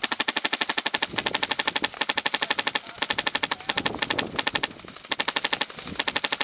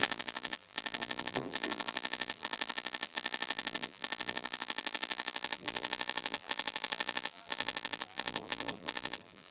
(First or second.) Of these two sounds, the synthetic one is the second